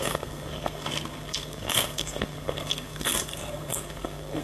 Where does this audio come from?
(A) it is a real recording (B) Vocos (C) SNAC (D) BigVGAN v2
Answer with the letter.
C